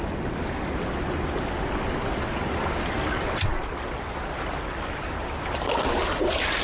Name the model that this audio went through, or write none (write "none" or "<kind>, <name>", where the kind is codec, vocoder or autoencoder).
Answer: none